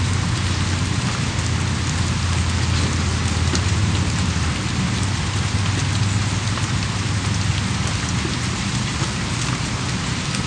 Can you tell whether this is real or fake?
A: real